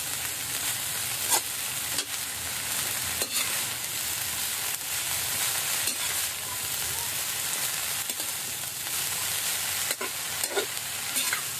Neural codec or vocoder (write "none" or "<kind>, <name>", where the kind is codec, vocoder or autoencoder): none